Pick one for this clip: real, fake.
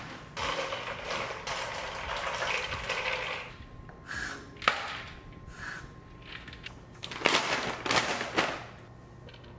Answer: real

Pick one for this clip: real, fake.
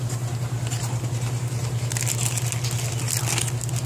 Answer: real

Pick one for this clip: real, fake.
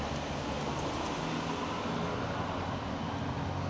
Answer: real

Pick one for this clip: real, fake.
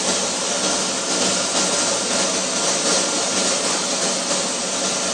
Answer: real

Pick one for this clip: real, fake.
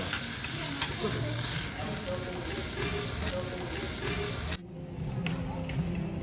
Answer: real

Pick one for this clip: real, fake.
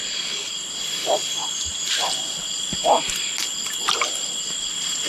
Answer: real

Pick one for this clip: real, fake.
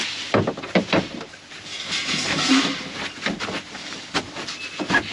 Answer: fake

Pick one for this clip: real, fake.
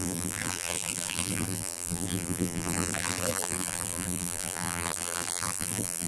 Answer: fake